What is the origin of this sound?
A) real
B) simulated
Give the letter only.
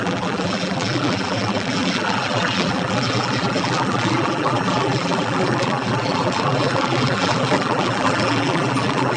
B